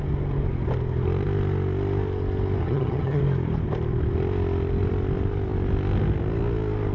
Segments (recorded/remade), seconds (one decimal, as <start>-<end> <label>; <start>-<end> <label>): 0.0-2.6 recorded; 2.6-3.2 remade; 3.2-6.9 recorded